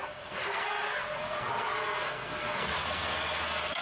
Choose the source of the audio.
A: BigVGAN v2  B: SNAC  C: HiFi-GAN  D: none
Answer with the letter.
B